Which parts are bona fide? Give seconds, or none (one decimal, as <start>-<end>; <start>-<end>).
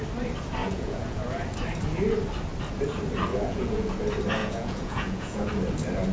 0.0-0.6; 1.2-3.3; 3.9-4.4; 5.5-6.1